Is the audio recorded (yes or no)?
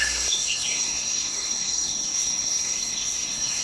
no